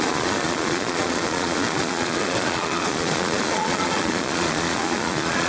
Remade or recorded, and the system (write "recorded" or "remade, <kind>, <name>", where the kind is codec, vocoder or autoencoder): remade, vocoder, Vocos